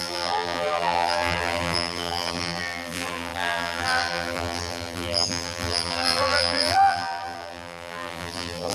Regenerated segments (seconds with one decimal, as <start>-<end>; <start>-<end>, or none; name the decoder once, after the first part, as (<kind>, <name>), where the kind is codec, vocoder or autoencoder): 0.0-8.7 (vocoder, BigVGAN v2)